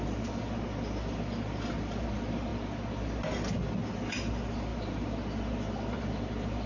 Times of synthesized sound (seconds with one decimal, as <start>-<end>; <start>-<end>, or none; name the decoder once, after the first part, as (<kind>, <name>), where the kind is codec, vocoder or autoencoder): none